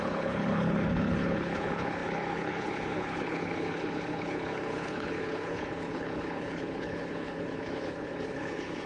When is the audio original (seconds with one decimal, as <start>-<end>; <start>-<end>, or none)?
none